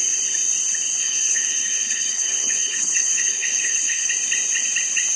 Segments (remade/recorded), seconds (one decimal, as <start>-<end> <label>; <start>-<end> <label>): 0.0-1.0 recorded; 1.0-4.1 remade; 4.1-5.2 recorded